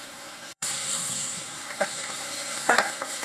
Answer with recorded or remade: remade